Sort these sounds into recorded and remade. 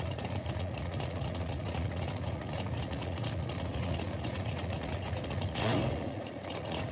remade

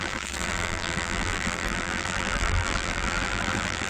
remade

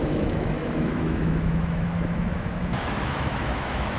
remade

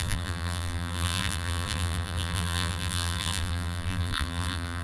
remade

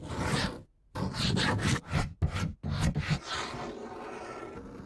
recorded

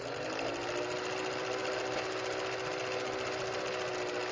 recorded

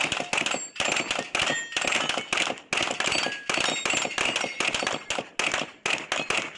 recorded